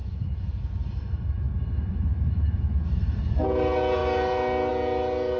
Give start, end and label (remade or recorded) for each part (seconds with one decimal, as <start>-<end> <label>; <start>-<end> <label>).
0.0-3.2 remade; 3.2-5.4 recorded